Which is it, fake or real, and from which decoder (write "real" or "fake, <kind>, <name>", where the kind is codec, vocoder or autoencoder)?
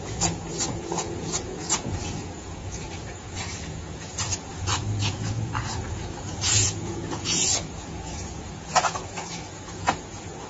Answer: fake, vocoder, Vocos